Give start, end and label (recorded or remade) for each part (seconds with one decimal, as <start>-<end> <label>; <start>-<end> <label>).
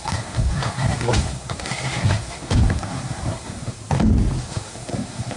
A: 0.0-3.8 remade; 3.8-4.4 recorded; 4.4-5.4 remade